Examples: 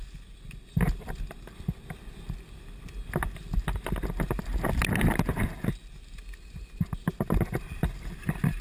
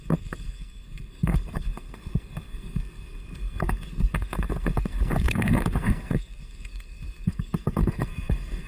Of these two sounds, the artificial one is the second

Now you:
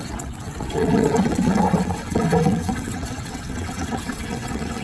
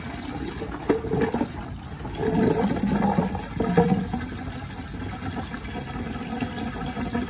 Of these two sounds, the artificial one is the first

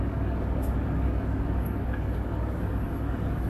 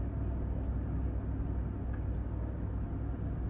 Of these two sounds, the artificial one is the first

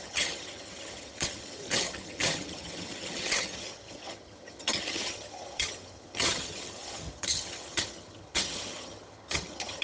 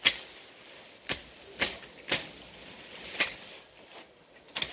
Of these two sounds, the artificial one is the first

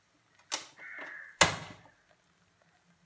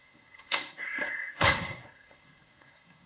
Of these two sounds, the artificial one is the second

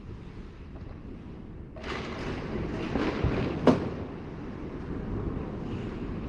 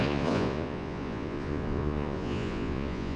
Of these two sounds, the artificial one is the second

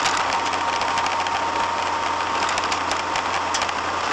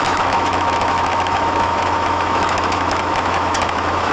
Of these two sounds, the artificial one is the second